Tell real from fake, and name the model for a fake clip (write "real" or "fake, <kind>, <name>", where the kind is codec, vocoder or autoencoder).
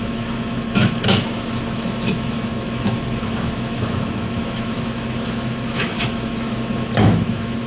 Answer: fake, autoencoder, DAC-VAE